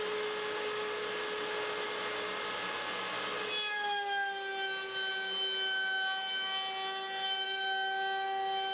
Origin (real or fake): real